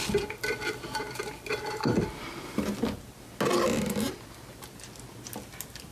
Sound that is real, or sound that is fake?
real